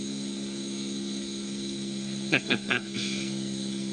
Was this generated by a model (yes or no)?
yes